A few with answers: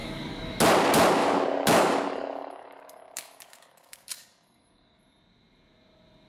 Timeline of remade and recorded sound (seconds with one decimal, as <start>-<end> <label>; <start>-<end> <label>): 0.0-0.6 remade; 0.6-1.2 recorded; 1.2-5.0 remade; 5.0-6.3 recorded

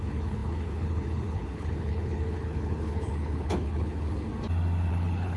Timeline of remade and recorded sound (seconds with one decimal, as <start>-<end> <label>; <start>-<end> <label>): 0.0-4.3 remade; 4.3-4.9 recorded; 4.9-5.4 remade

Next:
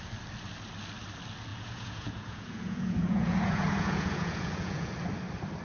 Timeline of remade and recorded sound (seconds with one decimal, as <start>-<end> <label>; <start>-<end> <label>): 0.0-1.5 recorded; 1.5-4.9 remade; 4.9-5.6 recorded